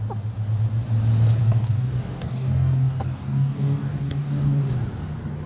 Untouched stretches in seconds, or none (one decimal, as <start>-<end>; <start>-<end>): 0.0-1.4; 4.7-5.5

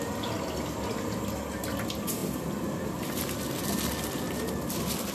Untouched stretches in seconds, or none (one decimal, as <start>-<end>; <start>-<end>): 0.0-5.1

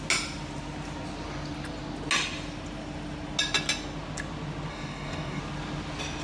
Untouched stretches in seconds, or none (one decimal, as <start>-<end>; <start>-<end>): 0.0-4.7; 5.4-6.2

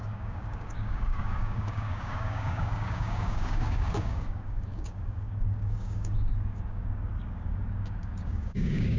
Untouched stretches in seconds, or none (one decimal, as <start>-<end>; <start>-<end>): none

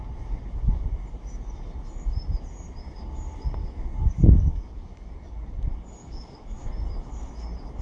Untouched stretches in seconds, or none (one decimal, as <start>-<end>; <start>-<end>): 0.0-3.6; 5.6-6.0; 6.7-7.8

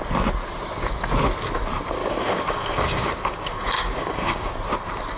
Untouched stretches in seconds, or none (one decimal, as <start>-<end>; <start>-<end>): 0.0-2.0; 4.5-5.2